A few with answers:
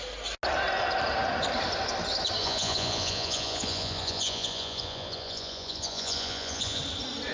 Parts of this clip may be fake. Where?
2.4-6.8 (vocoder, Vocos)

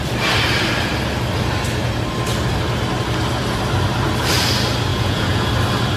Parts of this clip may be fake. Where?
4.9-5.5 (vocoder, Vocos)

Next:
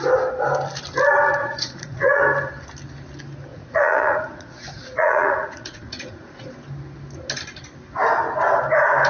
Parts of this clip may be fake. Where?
1.4-2.2 (vocoder, Vocos); 3.5-6.5

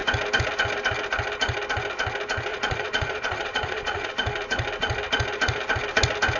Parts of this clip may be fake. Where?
2.5-4.1 (vocoder, Vocos)

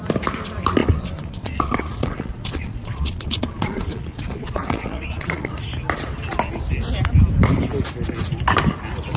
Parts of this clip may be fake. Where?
0.8-5.5 (vocoder, Vocos)